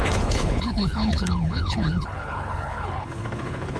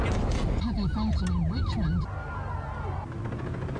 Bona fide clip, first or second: second